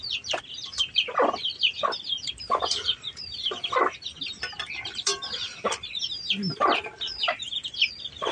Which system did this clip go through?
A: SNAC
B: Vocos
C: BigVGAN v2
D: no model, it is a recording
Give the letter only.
C